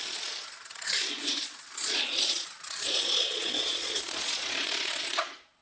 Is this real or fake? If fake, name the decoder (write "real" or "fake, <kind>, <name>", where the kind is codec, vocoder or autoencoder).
fake, vocoder, Vocos